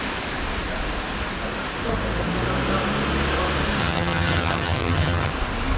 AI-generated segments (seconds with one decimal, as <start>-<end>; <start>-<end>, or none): 3.8-5.3